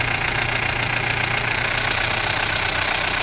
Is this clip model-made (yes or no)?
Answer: no